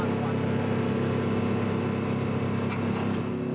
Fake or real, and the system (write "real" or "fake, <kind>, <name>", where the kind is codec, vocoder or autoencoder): real